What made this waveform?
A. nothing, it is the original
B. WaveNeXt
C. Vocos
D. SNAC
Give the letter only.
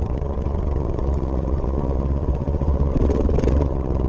B